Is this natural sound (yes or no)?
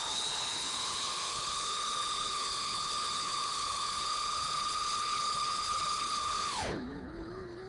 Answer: no